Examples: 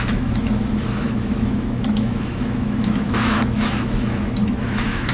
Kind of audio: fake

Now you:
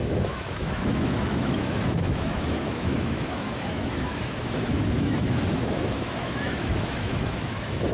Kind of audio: fake